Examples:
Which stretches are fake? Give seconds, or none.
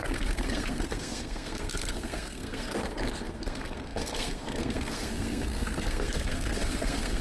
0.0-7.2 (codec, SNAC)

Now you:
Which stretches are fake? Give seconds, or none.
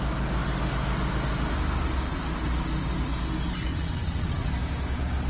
3.7-4.5 (vocoder, WaveNeXt)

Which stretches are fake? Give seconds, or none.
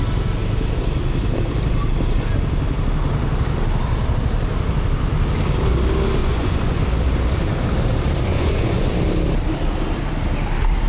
6.2-6.8 (vocoder, Vocos); 8.3-8.9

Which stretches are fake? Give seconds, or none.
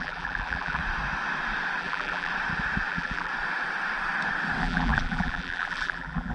0.0-0.8 (vocoder, BigVGAN v2); 1.8-2.3; 2.9-3.3; 4.6-6.3